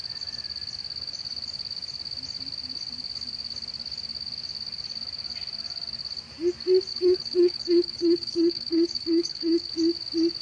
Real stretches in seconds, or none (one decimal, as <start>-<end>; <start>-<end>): 0.0-6.9; 9.7-10.4